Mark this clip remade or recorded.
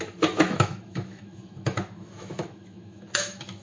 remade